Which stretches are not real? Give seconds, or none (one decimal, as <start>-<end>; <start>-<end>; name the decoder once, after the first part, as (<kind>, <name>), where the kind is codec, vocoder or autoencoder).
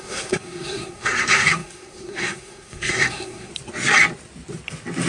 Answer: 0.0-3.5 (codec, SNAC)